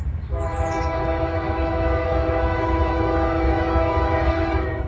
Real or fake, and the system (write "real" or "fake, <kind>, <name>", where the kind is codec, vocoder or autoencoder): fake, autoencoder, DAC-VAE